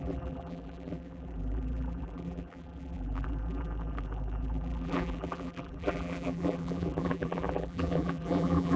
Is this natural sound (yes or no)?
no